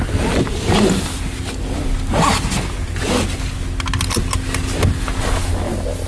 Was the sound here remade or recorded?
recorded